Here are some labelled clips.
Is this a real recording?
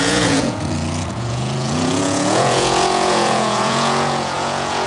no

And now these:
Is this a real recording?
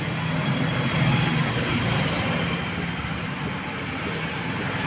yes